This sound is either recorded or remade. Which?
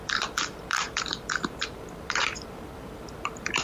remade